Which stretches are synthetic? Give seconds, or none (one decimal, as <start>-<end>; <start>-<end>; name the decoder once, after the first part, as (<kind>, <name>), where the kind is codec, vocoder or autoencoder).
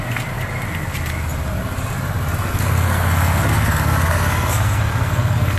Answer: 2.5-5.6 (codec, SNAC)